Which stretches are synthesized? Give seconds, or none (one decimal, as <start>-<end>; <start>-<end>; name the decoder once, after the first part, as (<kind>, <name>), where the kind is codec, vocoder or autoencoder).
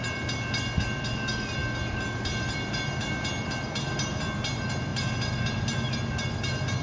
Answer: none